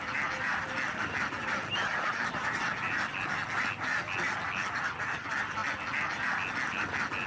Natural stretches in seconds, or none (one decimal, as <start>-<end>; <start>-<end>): 0.0-7.3